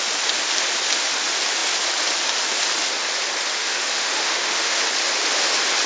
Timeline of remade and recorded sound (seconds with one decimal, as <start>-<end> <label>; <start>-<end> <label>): 0.0-3.6 recorded; 3.6-4.8 remade; 4.8-5.9 recorded